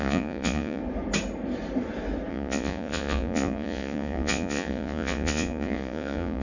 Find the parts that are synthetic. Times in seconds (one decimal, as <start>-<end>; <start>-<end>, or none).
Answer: 0.0-0.8; 2.3-6.4